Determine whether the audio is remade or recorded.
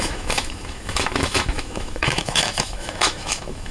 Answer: remade